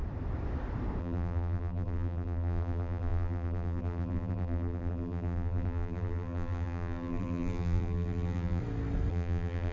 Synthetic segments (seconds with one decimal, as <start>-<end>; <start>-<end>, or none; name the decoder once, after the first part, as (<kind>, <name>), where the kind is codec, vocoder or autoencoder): 1.0-8.6 (vocoder, BigVGAN v2); 9.1-9.7